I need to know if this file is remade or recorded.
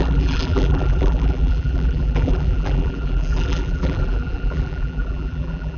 remade